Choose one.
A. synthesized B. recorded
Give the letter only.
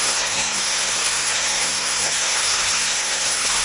A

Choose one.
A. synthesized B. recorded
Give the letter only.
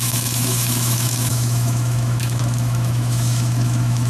A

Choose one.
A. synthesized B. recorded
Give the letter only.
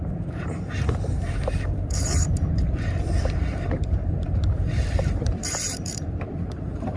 A